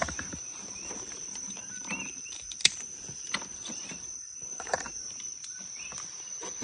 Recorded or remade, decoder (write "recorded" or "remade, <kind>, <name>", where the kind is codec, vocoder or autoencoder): remade, vocoder, BigVGAN v2